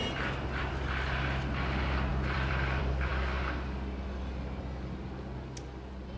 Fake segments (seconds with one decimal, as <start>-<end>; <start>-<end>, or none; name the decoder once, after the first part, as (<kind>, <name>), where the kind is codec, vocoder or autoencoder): 2.1-3.1 (vocoder, BigVGAN v2)